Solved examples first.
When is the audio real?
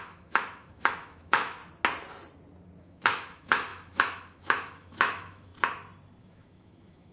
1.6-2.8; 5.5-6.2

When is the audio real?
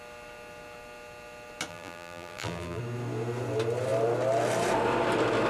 0.0-1.7; 2.8-5.5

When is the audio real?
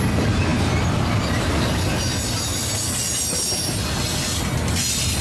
0.0-5.2